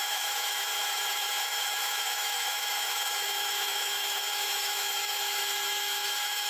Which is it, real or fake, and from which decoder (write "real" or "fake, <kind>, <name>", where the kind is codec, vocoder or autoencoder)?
fake, autoencoder, DAC-VAE